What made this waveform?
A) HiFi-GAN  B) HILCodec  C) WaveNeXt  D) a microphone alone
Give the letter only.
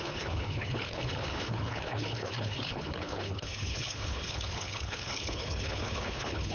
B